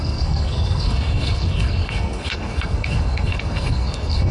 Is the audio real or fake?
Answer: fake